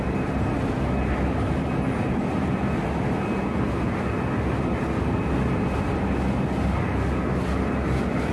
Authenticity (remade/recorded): recorded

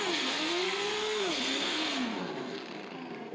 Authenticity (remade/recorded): remade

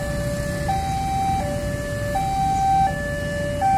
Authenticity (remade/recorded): recorded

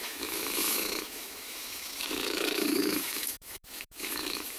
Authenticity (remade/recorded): remade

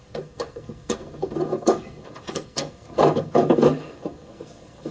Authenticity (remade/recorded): remade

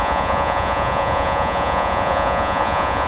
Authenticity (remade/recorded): remade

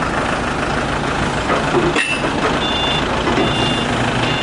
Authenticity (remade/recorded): recorded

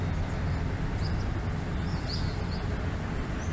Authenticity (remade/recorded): recorded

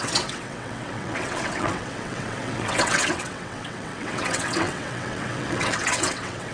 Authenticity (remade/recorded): remade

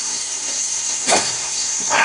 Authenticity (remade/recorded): remade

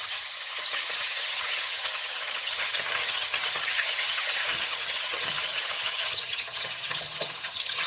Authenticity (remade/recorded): remade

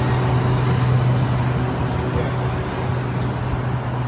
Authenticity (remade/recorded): recorded